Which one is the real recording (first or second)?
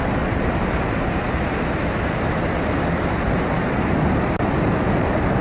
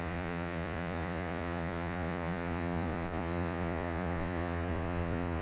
first